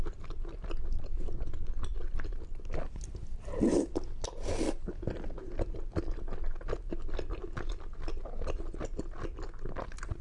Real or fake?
real